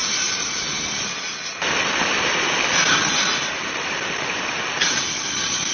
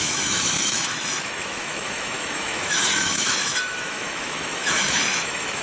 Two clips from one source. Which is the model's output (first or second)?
second